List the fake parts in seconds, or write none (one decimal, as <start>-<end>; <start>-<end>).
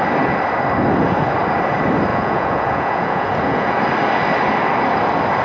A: 2.1-3.8